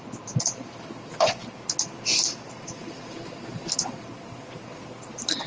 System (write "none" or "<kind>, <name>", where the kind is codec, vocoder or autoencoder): none